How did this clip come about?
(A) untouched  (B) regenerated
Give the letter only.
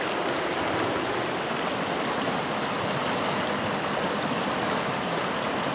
A